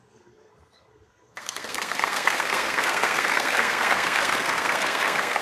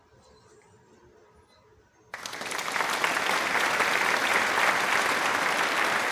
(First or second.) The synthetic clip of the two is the first